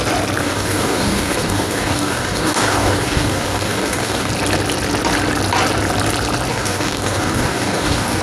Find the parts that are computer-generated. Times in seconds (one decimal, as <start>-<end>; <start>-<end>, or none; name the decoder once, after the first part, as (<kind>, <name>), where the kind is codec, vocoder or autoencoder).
0.4-4.3 (codec, DAC); 6.5-8.2